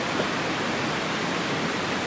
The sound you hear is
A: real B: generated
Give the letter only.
A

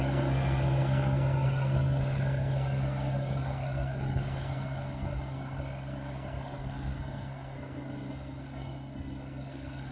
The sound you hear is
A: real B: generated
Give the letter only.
B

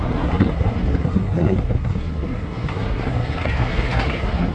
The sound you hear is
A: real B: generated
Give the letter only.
B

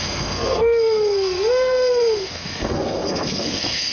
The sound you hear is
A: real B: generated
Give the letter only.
B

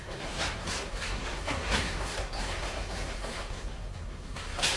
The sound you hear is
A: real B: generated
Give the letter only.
B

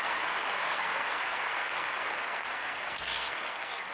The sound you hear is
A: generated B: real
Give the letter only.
A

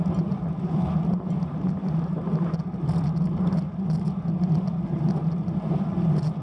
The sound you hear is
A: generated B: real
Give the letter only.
B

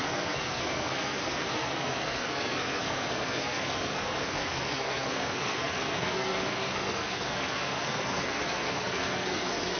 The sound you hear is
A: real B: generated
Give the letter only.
B